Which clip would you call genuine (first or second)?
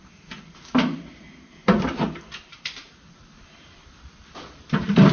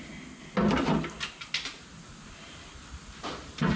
second